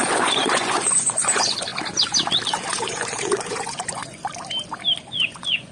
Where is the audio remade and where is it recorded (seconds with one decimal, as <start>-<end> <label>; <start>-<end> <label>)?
0.0-1.7 remade; 1.7-2.5 recorded; 2.5-4.2 remade; 4.2-5.0 recorded; 5.0-5.7 remade